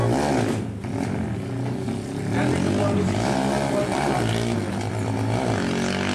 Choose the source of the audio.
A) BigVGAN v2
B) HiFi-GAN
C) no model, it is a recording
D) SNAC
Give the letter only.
C